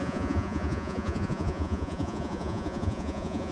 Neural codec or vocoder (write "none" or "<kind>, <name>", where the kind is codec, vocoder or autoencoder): vocoder, Vocos